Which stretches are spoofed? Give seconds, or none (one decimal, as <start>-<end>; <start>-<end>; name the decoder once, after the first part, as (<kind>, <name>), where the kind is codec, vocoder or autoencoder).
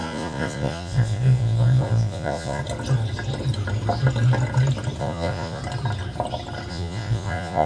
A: 0.0-2.6 (vocoder, Vocos); 5.0-5.6; 6.7-7.7